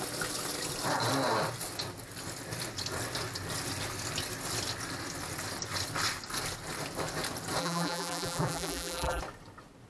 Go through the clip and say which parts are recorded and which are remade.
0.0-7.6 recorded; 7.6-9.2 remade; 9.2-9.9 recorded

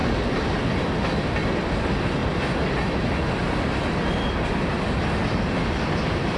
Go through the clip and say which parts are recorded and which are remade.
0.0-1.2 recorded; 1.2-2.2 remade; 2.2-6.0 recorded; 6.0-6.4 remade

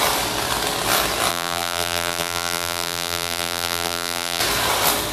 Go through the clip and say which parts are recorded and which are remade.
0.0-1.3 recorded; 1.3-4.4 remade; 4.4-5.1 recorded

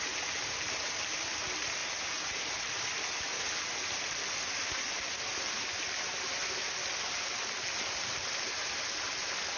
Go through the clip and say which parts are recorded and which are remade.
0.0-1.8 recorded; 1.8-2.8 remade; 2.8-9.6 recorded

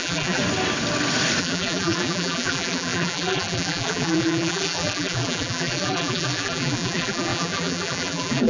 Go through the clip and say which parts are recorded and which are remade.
0.0-0.4 remade; 0.4-1.4 recorded; 1.4-8.5 remade